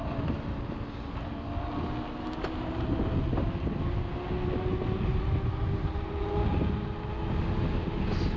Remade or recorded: recorded